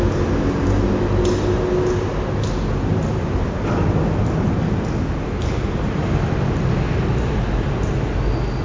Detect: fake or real real